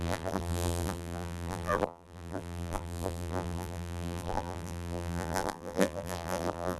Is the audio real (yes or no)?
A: no